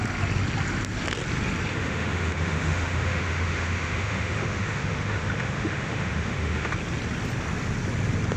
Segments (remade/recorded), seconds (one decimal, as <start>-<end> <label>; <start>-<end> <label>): 0.0-1.7 recorded; 1.7-6.7 remade; 6.7-8.4 recorded

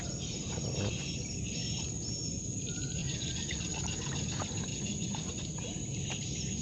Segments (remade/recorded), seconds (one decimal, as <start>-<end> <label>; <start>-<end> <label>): 0.0-3.0 recorded; 3.0-3.6 remade; 3.6-4.7 recorded; 4.7-5.3 remade; 5.3-6.6 recorded